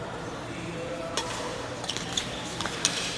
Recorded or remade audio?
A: remade